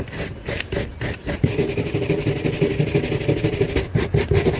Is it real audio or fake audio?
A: real